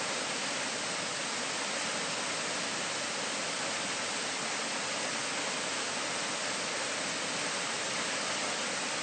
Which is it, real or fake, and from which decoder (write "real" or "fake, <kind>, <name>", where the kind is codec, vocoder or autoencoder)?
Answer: real